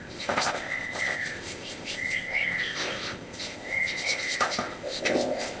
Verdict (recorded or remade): remade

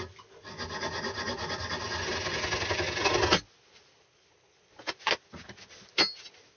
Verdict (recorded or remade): recorded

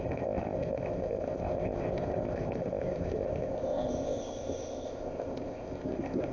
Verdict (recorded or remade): remade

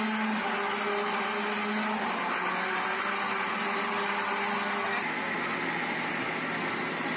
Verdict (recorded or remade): recorded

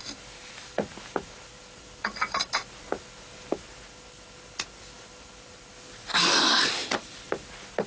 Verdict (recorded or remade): recorded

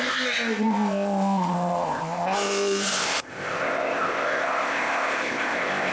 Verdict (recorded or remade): remade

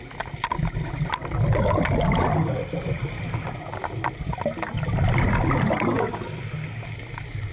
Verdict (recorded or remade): recorded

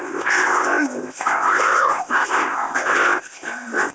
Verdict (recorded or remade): remade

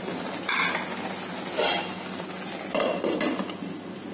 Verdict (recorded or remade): recorded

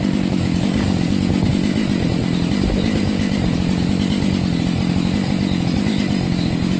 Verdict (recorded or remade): recorded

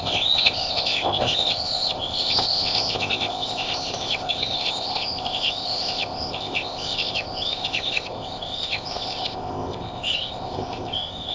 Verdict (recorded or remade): remade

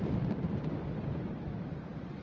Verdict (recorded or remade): recorded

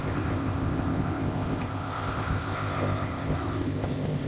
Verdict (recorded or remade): remade